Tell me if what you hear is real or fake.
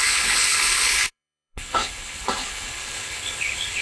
fake